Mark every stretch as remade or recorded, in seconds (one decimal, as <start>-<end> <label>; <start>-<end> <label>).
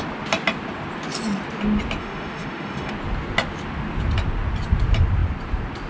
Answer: 0.0-2.0 recorded; 2.0-2.9 remade; 2.9-5.9 recorded